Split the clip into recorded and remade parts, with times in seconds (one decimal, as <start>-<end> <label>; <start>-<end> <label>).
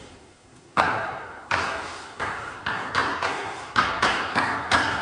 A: 0.0-5.0 remade